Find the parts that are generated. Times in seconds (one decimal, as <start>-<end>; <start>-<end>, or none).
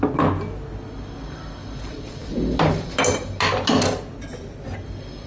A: none